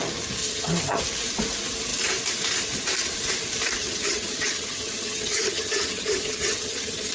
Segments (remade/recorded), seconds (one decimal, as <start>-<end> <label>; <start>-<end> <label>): 0.0-0.4 recorded; 0.4-1.0 remade; 1.0-3.8 recorded; 3.8-7.1 remade